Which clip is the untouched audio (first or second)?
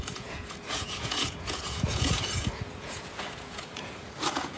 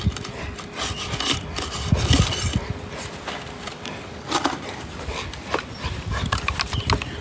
second